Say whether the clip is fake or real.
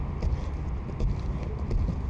real